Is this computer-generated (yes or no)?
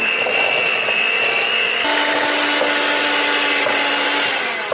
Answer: no